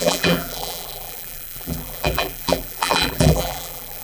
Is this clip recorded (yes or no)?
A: no